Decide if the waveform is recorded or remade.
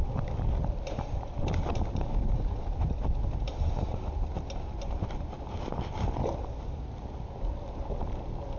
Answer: recorded